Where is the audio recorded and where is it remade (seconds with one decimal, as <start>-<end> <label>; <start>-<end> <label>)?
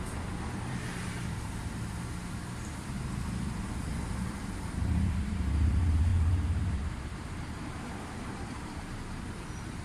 0.0-9.8 remade